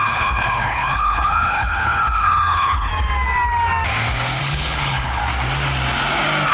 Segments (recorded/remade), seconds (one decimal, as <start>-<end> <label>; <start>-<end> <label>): 0.0-2.9 remade; 2.9-4.4 recorded; 4.4-5.2 remade; 5.2-6.5 recorded